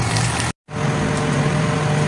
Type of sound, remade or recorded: recorded